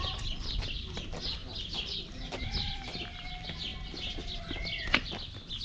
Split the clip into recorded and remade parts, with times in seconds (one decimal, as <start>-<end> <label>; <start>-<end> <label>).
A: 0.0-1.4 recorded; 1.4-3.3 remade; 3.3-5.6 recorded

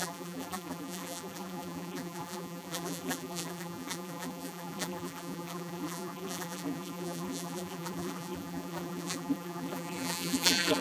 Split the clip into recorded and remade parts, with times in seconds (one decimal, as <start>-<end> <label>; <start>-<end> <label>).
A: 0.0-10.8 remade

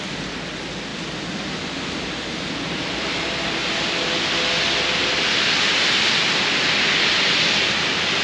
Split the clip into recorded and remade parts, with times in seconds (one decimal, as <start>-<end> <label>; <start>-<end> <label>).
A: 0.0-8.2 recorded

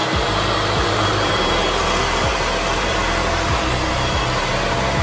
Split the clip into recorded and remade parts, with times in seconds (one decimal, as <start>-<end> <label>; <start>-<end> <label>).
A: 0.0-0.8 recorded; 0.8-1.6 remade; 1.6-2.8 recorded; 2.8-5.0 remade

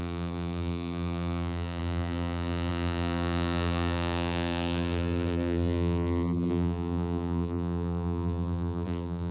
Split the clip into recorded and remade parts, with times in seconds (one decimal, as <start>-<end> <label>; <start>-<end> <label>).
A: 0.0-9.3 remade

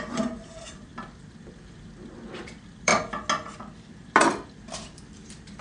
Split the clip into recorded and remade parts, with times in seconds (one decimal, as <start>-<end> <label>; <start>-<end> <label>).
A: 0.0-2.9 remade; 2.9-3.9 recorded; 3.9-5.6 remade

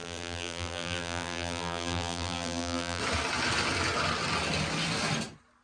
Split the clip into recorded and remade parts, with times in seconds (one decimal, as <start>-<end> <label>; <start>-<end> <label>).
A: 0.0-3.0 remade; 3.0-5.6 recorded

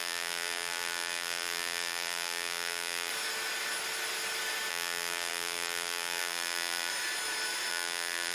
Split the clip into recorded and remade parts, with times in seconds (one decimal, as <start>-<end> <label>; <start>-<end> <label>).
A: 0.0-3.1 remade; 3.1-4.7 recorded; 4.7-6.9 remade; 6.9-7.7 recorded; 7.7-8.3 remade